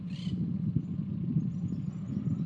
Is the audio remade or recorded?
recorded